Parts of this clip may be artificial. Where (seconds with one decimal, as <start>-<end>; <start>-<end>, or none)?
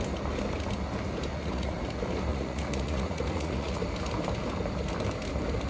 1.3-1.8; 2.3-3.8